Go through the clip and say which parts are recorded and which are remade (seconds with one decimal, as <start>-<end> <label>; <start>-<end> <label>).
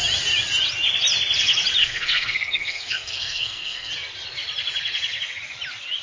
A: 0.0-1.8 recorded; 1.8-3.9 remade; 3.9-6.0 recorded